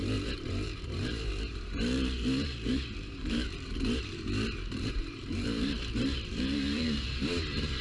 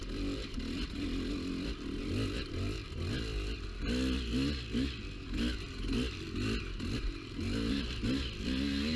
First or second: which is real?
second